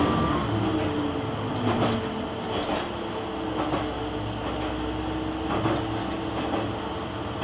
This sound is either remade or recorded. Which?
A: recorded